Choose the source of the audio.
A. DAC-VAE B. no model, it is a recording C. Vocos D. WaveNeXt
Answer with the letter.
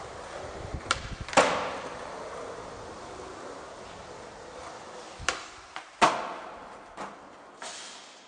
B